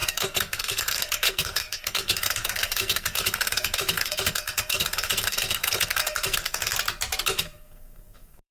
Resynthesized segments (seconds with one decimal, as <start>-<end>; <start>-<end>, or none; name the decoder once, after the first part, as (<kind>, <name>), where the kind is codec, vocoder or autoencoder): 0.0-6.7 (codec, SNAC); 7.4-8.5